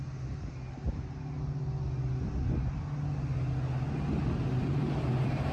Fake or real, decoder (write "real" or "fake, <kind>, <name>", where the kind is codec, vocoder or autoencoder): real